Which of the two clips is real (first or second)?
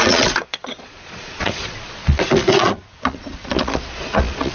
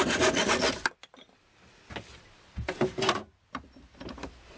second